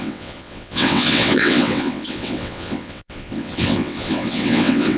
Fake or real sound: fake